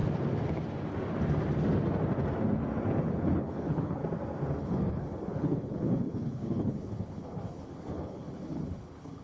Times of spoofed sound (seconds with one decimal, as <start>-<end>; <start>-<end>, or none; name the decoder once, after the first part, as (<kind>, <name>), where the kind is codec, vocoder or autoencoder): 3.1-4.0 (codec, HILCodec); 4.6-9.2